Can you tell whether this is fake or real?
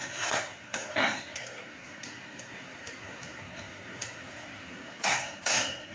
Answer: fake